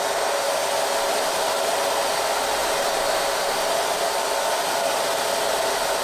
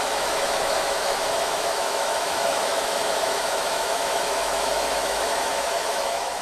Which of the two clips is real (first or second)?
first